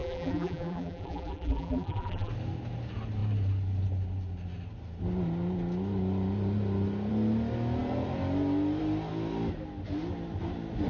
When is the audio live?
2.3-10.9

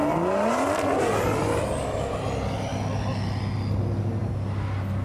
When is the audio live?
1.0-5.0